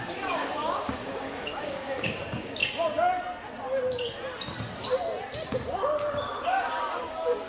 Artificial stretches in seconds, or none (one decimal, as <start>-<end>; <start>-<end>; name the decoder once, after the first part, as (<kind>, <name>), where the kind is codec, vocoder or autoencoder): 0.0-2.6 (codec, DAC); 7.1-7.5